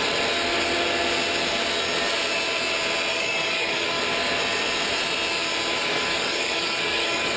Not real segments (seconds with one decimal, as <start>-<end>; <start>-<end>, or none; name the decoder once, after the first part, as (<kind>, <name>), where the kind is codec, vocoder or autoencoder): 3.1-4.0 (codec, DAC); 5.8-7.4